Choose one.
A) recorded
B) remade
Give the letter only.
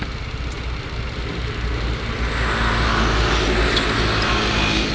A